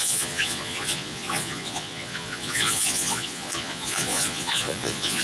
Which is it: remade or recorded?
remade